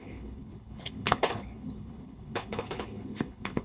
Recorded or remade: remade